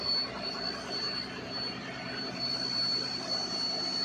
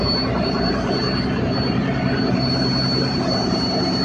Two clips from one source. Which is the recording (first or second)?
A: first